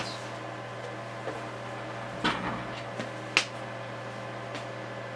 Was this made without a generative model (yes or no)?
yes